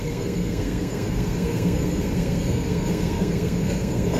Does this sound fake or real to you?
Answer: fake